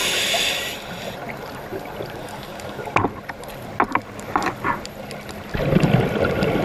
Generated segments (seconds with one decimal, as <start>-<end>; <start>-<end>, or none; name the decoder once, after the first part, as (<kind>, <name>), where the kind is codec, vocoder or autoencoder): none

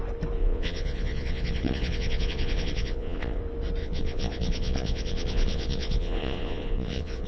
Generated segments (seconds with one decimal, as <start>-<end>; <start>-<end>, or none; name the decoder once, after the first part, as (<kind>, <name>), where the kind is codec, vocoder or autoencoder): 0.4-3.4 (vocoder, Vocos); 3.8-7.3